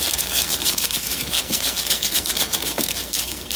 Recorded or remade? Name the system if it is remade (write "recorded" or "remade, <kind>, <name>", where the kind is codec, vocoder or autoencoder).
remade, codec, SNAC